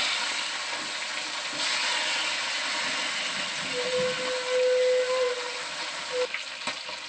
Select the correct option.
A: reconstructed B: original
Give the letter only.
B